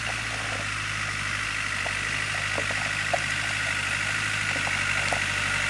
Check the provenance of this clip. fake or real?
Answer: real